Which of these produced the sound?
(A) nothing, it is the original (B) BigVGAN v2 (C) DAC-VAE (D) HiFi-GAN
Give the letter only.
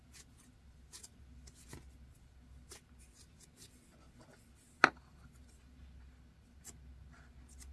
A